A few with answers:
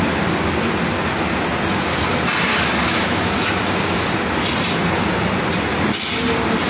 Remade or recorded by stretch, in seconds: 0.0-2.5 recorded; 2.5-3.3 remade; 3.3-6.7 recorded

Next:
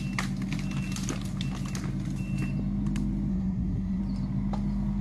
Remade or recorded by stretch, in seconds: 0.0-3.3 recorded; 3.3-4.0 remade; 4.0-5.0 recorded

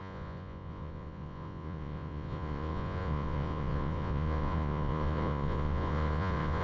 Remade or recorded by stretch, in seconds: 0.0-6.6 remade

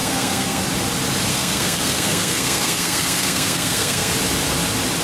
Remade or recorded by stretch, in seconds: 0.0-0.6 remade; 0.6-1.3 recorded; 1.3-4.1 remade; 4.1-5.0 recorded

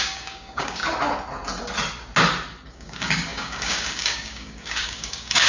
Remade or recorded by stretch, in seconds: 0.0-0.8 remade; 0.8-2.7 recorded; 2.7-5.5 remade

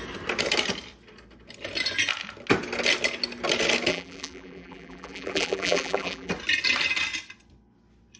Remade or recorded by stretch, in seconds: 0.0-3.9 recorded; 3.9-6.3 remade; 6.3-8.2 recorded